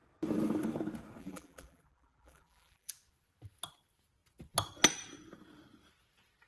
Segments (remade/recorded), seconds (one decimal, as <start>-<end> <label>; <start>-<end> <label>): 0.0-1.2 recorded; 1.2-2.9 remade; 2.9-6.5 recorded